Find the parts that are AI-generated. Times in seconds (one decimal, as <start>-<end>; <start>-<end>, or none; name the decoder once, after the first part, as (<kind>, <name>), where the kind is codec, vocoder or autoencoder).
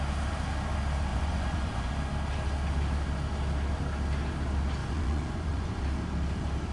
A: 1.1-1.9 (vocoder, Vocos); 4.8-5.8